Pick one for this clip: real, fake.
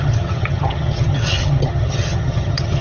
fake